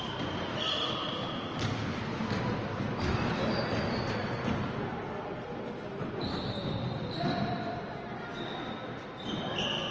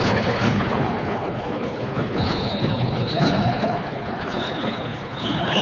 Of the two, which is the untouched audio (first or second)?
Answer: first